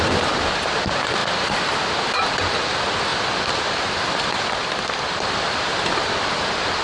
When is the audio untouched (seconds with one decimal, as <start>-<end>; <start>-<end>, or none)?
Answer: 0.0-1.2; 2.5-3.1